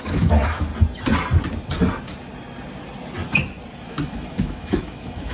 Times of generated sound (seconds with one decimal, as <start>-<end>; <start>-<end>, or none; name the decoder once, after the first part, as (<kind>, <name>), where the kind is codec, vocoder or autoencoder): 0.0-0.7 (autoencoder, DAC-VAE); 3.9-5.3